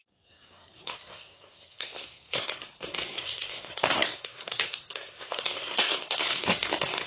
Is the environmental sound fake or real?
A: fake